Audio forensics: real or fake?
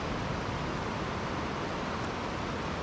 real